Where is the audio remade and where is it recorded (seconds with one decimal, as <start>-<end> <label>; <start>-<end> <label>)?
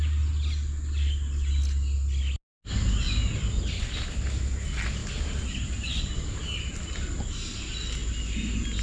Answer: 0.0-8.8 recorded